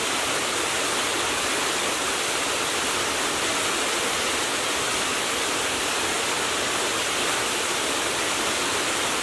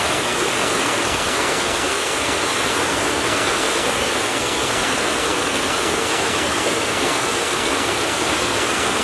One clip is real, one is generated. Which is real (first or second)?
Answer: first